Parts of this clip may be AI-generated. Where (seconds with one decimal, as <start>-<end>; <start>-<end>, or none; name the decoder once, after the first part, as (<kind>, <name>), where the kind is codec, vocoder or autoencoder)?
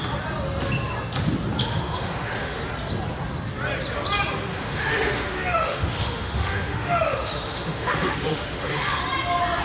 1.6-2.6 (autoencoder, DAC-VAE); 4.5-9.0